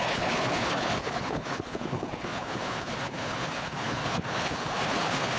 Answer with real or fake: fake